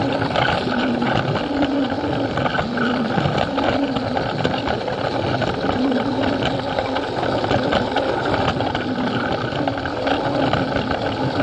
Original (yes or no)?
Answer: yes